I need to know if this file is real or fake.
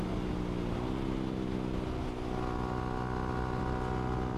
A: real